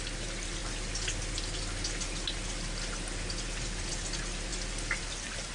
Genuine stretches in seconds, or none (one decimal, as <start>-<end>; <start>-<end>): 0.0-5.5